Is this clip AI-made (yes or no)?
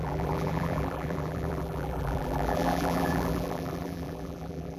yes